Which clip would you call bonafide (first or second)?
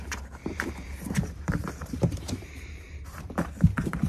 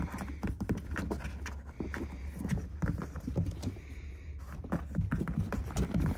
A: second